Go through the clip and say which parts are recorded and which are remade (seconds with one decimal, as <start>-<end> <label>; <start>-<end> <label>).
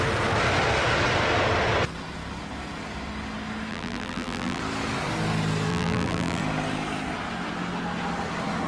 0.0-3.7 recorded; 3.7-4.6 remade; 4.6-5.7 recorded; 5.7-6.4 remade; 6.4-8.7 recorded